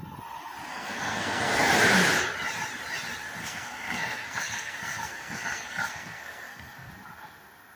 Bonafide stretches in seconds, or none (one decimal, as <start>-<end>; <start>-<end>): 0.0-0.7; 1.6-3.4; 6.9-7.8